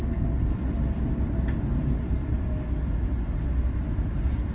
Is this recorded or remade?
recorded